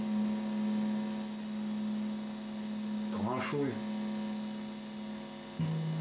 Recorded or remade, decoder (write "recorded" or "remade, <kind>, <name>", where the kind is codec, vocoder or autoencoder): recorded